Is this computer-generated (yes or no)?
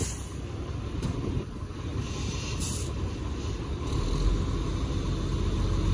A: no